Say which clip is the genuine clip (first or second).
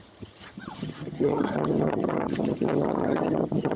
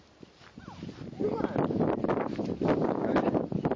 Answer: second